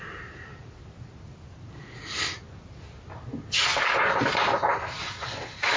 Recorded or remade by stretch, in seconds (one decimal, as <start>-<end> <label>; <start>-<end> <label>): 0.0-5.8 recorded